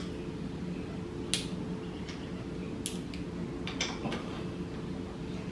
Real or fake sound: real